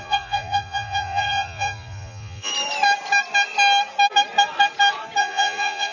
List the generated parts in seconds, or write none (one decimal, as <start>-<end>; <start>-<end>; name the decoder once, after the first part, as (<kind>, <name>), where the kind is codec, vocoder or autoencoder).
0.0-2.5 (vocoder, Vocos); 5.2-5.9